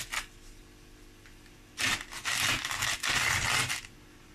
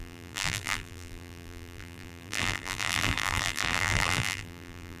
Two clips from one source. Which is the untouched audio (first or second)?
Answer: first